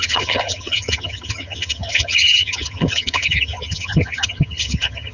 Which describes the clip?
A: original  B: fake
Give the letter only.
B